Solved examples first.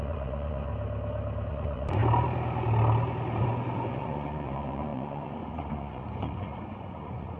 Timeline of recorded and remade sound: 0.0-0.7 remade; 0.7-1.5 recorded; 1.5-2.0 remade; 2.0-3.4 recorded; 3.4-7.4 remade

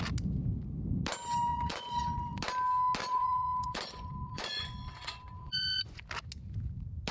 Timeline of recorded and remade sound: 0.0-1.5 recorded; 1.5-2.4 remade; 2.4-3.0 recorded; 3.0-6.0 remade; 6.0-7.1 recorded

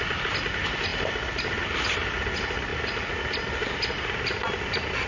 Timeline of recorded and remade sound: 0.0-5.1 recorded

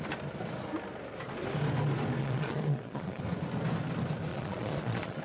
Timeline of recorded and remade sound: 0.0-2.2 recorded; 2.2-3.2 remade; 3.2-4.3 recorded; 4.3-5.2 remade

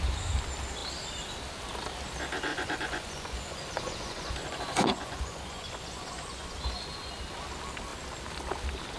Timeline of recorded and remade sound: 0.0-2.5 recorded; 2.5-7.1 remade; 7.1-9.0 recorded

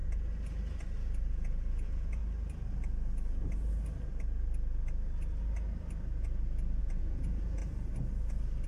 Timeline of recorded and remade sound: 0.0-1.2 recorded; 1.2-2.2 remade; 2.2-6.8 recorded; 6.8-7.6 remade; 7.6-8.7 recorded

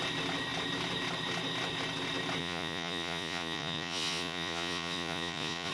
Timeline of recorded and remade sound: 0.0-2.4 recorded; 2.4-5.7 remade